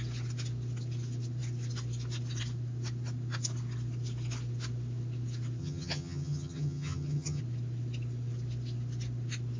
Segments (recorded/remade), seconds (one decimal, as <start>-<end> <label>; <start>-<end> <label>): 0.0-5.6 recorded; 5.6-7.4 remade; 7.4-9.6 recorded